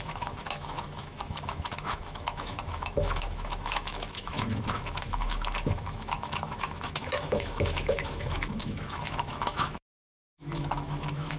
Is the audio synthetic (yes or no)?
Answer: yes